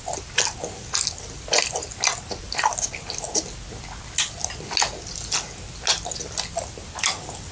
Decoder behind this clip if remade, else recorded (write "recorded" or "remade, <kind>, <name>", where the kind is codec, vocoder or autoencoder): recorded